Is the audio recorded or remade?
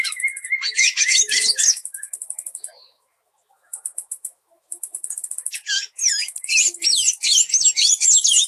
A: remade